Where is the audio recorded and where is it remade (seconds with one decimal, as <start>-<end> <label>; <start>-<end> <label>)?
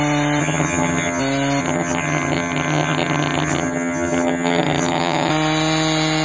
0.0-0.4 recorded; 0.4-1.2 remade; 1.2-1.6 recorded; 1.6-5.3 remade; 5.3-6.2 recorded